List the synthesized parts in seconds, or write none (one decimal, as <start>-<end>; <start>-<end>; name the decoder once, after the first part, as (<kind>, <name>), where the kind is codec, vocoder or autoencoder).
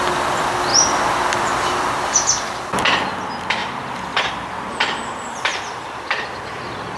0.7-2.7 (vocoder, BigVGAN v2); 3.6-4.3; 5.5-7.0